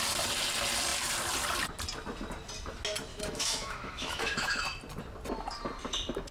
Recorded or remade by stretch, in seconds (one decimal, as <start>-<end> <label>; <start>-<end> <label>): 0.0-3.1 recorded; 3.1-4.6 remade; 4.6-6.3 recorded